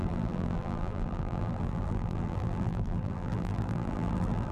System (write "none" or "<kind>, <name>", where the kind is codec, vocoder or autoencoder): vocoder, BigVGAN v2